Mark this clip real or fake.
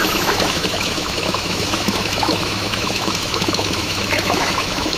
fake